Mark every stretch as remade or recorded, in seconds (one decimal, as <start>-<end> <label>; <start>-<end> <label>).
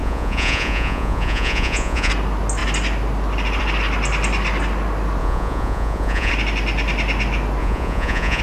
0.0-2.1 remade; 2.1-5.2 recorded; 5.2-6.3 remade; 6.3-7.6 recorded; 7.6-8.4 remade